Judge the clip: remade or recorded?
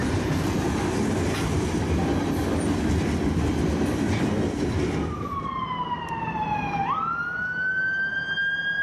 recorded